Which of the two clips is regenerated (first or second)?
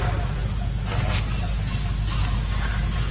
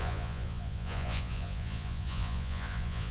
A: second